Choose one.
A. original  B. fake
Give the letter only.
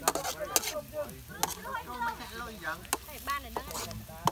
A